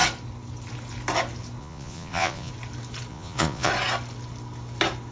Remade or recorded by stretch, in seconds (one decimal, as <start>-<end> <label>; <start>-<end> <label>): 0.0-1.6 recorded; 1.6-2.5 remade; 2.5-3.1 recorded; 3.1-3.7 remade; 3.7-5.1 recorded